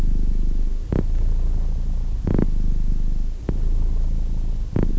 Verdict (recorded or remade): recorded